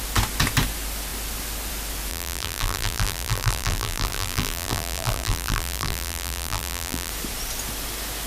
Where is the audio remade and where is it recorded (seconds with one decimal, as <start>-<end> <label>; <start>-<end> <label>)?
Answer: 0.0-2.1 recorded; 2.1-7.1 remade; 7.1-8.3 recorded